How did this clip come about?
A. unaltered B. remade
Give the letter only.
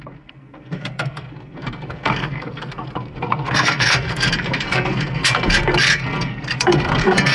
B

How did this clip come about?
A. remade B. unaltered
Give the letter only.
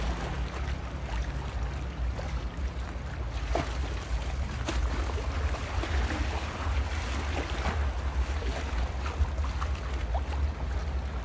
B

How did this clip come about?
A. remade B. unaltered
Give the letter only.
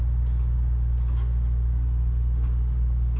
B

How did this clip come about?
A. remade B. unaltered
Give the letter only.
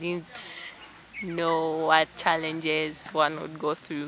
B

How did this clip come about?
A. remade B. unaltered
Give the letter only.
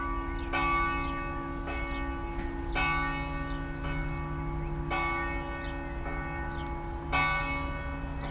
B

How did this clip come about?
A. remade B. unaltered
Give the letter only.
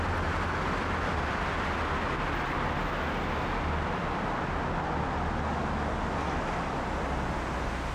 B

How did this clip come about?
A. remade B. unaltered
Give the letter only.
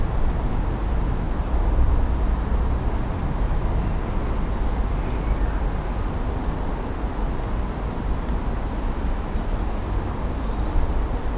B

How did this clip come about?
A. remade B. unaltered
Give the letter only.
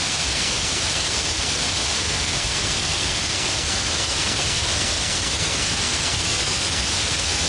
A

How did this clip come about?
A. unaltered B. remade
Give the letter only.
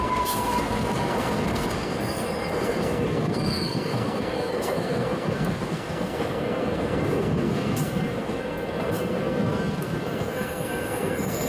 B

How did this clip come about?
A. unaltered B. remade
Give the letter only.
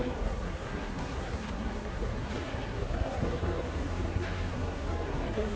B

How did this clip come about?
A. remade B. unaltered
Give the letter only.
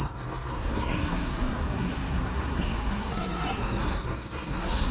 A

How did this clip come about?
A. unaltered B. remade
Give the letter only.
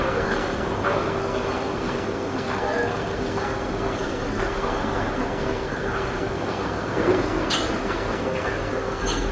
B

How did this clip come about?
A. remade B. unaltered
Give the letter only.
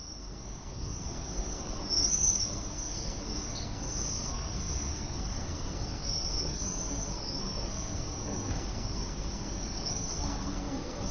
A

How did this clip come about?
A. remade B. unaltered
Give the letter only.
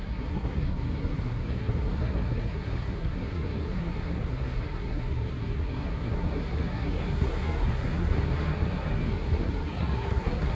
A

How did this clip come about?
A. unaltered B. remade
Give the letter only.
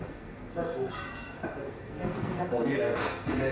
B